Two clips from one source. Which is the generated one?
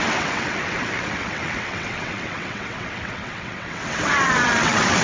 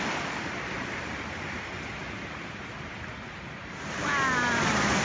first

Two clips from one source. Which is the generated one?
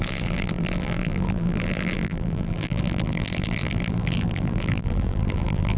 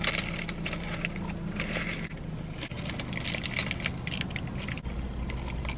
first